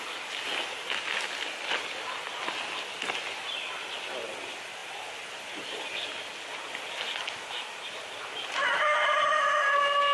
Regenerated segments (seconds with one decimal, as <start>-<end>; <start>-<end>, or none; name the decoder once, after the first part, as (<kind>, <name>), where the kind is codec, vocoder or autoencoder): none